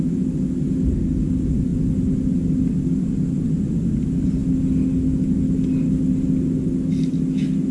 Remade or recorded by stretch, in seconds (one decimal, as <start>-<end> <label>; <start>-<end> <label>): 0.0-7.7 recorded

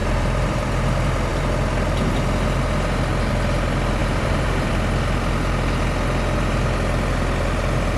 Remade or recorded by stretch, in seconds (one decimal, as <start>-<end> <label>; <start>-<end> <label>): 0.0-0.7 remade; 0.7-4.0 recorded; 4.0-4.7 remade; 4.7-8.0 recorded